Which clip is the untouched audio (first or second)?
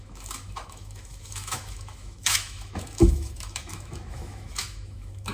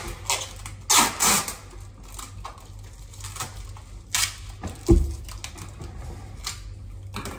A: second